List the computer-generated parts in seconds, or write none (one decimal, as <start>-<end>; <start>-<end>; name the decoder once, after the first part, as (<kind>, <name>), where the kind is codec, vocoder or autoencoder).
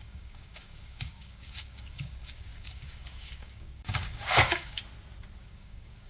0.0-4.8 (codec, DAC); 5.4-6.1